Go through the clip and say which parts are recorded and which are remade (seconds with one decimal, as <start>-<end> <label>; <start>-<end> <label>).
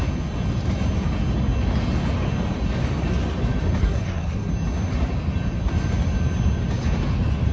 0.0-3.8 recorded; 3.8-4.5 remade; 4.5-7.5 recorded